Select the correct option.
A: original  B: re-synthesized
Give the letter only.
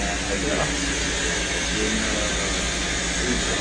A